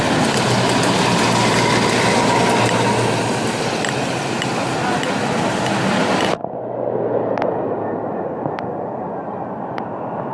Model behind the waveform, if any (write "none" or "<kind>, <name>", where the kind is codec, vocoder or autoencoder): none